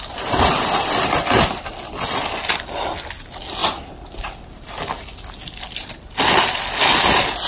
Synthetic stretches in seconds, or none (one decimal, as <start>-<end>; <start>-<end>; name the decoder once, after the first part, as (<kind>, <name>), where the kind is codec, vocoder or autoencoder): none